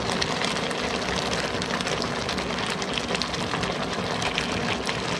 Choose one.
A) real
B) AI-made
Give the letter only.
A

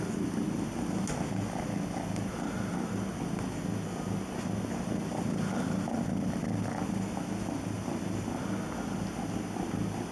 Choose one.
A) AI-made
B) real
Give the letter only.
B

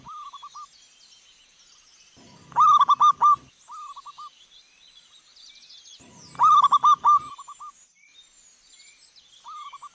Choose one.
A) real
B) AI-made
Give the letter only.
A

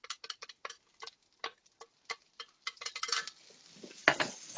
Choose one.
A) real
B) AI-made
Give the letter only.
A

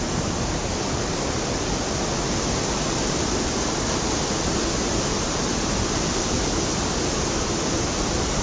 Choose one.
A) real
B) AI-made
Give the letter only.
A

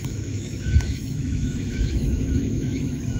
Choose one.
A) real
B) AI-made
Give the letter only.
B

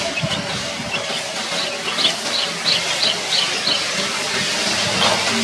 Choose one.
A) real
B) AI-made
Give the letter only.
A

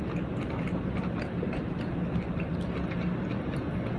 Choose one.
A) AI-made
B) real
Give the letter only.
B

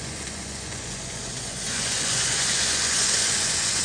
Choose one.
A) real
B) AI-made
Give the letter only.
B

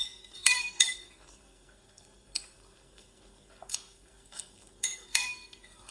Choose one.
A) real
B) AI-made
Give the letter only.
B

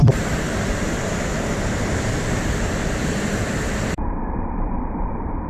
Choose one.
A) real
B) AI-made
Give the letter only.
B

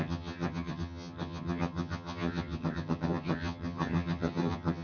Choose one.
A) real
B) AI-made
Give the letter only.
B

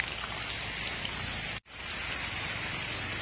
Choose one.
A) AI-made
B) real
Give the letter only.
B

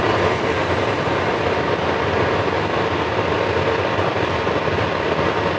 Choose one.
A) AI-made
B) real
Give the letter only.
B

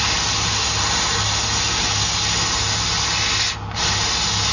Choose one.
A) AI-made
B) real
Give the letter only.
B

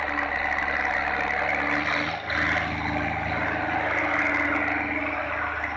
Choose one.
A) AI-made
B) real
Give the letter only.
B